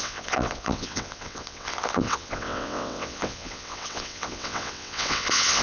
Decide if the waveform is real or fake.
fake